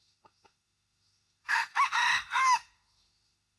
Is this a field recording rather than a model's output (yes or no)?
no